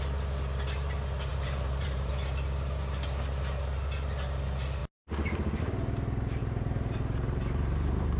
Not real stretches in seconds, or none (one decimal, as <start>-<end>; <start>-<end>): 1.3-2.1; 6.4-8.2